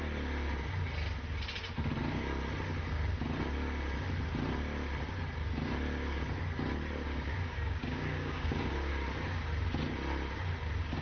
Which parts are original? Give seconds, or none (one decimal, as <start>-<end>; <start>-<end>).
0.0-7.3; 8.9-11.0